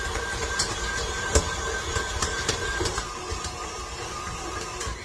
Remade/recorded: remade